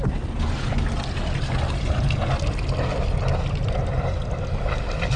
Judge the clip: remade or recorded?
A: recorded